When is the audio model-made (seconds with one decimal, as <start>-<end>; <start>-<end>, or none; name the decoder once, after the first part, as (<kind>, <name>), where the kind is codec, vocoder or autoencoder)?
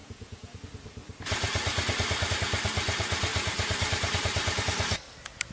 0.0-0.6 (vocoder, Vocos)